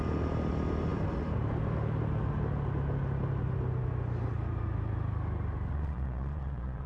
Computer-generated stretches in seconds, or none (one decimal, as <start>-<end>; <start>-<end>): 5.7-6.9

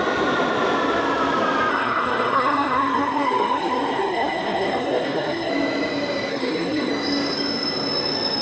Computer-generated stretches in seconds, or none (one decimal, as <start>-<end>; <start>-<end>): 1.7-5.5; 6.3-6.9

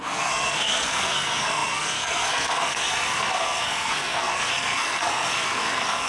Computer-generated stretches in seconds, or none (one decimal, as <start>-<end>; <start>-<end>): 0.0-6.1